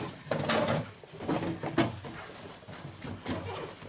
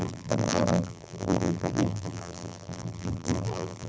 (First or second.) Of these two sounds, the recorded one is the first